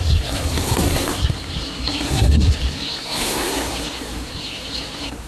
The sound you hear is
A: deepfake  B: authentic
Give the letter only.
A